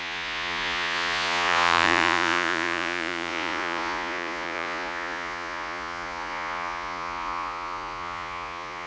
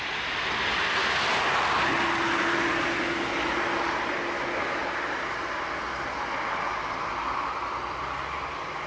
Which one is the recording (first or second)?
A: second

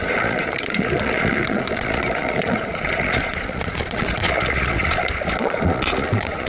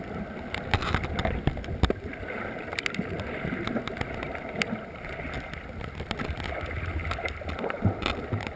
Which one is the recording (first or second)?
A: second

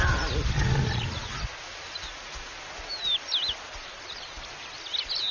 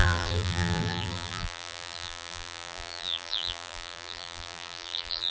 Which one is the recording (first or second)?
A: first